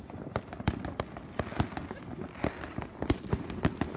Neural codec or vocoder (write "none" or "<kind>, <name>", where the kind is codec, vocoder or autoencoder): none